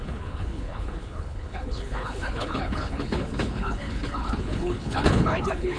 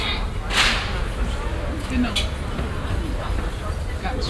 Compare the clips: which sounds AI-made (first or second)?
first